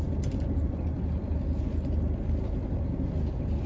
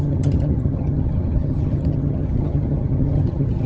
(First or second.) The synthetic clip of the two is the second